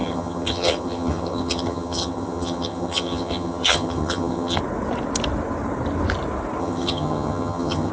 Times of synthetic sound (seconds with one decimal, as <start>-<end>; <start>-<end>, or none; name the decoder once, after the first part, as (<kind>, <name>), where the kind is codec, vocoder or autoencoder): 0.0-4.6 (vocoder, HiFi-GAN); 6.6-7.9